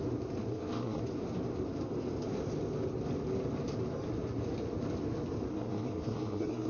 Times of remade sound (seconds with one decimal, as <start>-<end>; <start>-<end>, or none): 0.5-1.0; 5.5-6.7